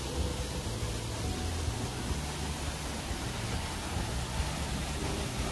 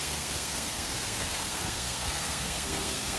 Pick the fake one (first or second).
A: second